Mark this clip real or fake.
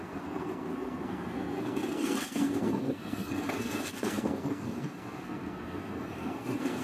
fake